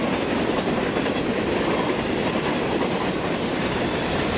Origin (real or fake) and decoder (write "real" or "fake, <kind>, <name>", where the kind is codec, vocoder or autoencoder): fake, vocoder, BigVGAN v2